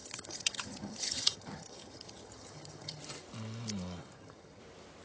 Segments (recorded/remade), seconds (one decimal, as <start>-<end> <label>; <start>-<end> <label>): 0.0-3.0 remade; 3.0-4.0 recorded; 4.0-4.6 remade; 4.6-5.0 recorded